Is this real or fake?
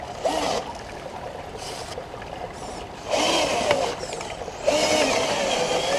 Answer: real